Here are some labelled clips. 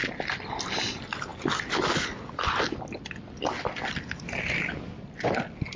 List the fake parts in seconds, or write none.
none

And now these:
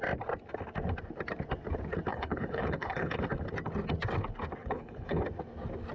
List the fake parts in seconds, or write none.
2.1-3.2 (codec, HILCodec); 4.6-5.2